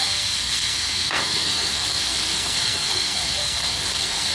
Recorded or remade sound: remade